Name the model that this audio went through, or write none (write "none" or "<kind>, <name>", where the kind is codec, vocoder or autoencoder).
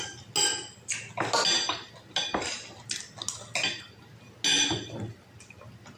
none